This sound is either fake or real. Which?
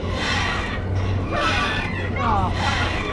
real